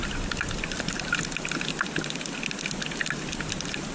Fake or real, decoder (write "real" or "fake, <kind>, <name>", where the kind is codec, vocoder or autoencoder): real